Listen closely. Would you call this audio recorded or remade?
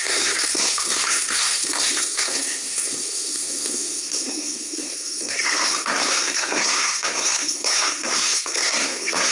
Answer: remade